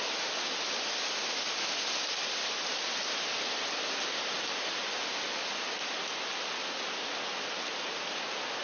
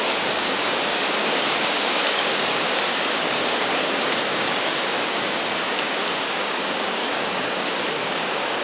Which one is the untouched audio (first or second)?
first